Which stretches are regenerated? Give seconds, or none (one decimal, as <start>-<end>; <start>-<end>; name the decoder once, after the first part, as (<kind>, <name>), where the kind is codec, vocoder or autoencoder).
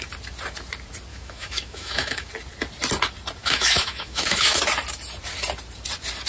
1.1-2.3 (autoencoder, DAC-VAE); 3.4-4.6